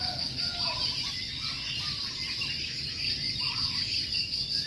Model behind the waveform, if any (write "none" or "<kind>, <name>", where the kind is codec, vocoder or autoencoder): none